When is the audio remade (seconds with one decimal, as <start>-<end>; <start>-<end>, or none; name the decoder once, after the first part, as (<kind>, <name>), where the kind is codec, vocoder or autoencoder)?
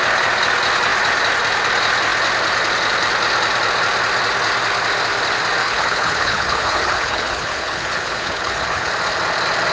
5.6-8.9 (codec, HILCodec)